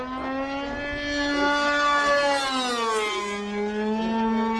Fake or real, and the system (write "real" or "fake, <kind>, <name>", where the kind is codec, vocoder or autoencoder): real